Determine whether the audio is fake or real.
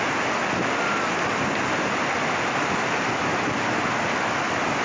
real